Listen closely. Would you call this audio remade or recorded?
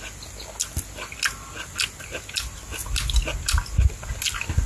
recorded